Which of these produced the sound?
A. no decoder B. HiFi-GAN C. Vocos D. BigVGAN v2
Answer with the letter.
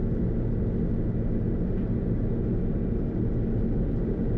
A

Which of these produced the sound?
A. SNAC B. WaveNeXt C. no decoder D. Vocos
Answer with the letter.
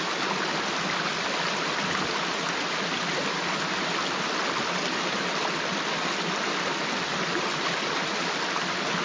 C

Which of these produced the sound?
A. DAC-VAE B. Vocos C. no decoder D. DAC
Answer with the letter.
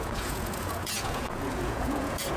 B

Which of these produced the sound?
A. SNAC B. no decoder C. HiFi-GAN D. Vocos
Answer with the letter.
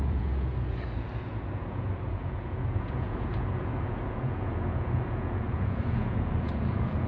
D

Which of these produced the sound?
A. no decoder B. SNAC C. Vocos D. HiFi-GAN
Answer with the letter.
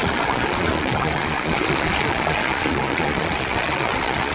C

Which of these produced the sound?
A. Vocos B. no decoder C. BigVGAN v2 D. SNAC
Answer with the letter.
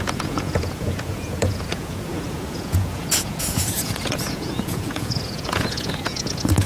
A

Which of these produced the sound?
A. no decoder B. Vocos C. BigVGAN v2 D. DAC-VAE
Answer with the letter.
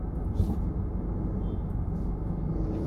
A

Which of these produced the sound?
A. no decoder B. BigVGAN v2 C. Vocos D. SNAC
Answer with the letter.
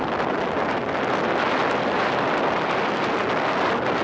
A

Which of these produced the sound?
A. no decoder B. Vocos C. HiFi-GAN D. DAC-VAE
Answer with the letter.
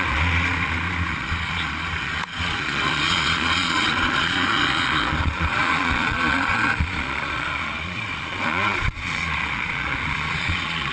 B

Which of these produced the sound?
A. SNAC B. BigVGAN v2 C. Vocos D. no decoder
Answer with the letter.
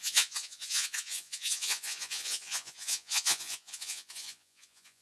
C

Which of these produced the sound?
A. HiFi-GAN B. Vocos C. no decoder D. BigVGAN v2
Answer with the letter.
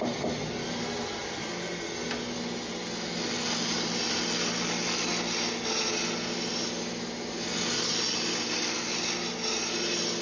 C